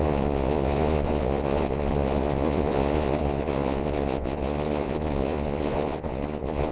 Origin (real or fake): fake